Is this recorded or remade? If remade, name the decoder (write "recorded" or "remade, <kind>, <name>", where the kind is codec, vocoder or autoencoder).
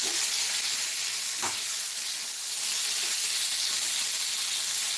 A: recorded